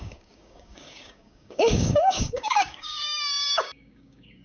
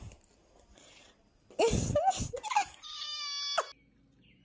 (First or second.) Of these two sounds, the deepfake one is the first